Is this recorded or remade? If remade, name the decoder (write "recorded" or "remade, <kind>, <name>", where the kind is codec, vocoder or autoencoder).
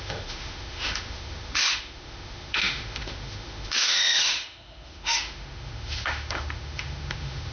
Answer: remade, autoencoder, DAC-VAE